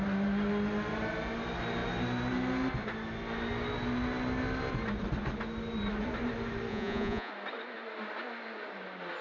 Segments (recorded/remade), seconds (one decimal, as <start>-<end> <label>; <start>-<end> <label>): 0.0-6.7 recorded; 6.7-7.3 remade; 7.3-9.2 recorded